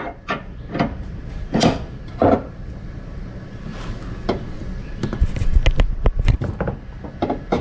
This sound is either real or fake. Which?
real